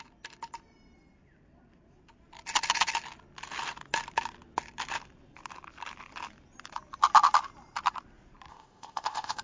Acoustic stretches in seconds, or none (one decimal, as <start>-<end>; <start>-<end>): 0.0-8.5

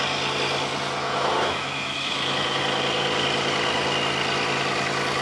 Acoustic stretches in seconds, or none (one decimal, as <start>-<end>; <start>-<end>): 0.0-1.0; 2.6-5.2